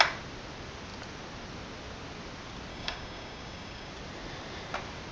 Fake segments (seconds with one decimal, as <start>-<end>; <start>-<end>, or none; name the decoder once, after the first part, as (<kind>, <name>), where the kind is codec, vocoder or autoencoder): 2.7-3.9 (codec, DAC)